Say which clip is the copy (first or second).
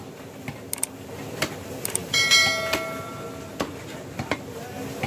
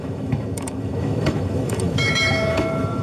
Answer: second